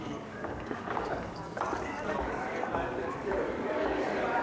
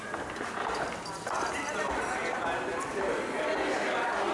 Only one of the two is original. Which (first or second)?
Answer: second